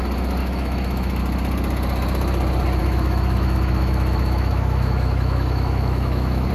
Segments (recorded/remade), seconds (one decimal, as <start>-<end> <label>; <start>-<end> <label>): 0.0-0.4 recorded; 0.4-1.2 remade; 1.2-2.8 recorded; 2.8-6.5 remade